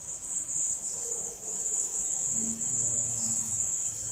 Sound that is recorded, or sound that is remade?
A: remade